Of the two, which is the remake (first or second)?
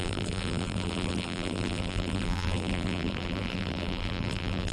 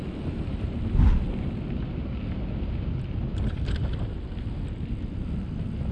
first